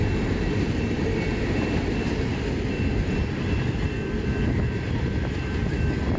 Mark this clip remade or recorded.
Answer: recorded